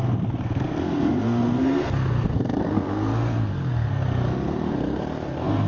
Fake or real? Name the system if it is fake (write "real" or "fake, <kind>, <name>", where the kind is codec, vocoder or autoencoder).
fake, codec, SNAC